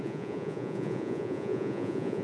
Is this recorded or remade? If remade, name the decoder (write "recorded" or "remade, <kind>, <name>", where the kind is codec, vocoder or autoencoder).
remade, vocoder, Vocos